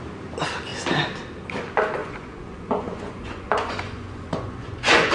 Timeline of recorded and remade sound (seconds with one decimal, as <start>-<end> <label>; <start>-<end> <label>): 0.0-2.0 recorded; 2.0-5.1 remade